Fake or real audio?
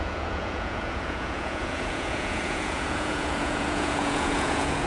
fake